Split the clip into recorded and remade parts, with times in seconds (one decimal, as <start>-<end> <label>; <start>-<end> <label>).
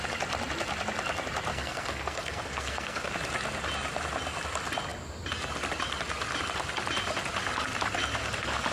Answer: 0.0-1.5 recorded; 1.5-3.1 remade; 3.1-8.7 recorded